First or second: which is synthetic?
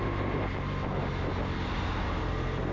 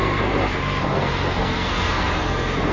second